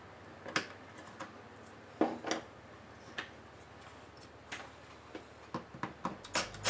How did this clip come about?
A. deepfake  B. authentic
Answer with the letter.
B